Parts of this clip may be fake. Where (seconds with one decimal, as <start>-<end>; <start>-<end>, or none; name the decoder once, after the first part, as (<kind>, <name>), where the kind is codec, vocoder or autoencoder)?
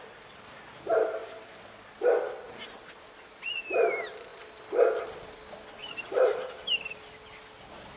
5.8-7.1 (vocoder, BigVGAN v2)